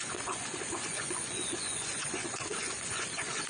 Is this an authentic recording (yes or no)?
no